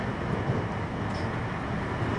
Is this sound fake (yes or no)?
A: no